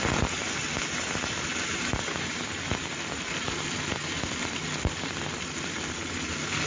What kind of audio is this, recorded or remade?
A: recorded